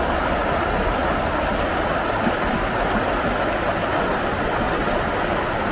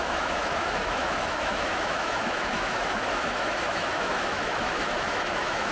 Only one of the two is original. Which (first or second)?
first